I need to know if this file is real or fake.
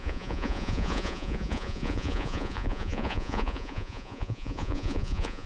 fake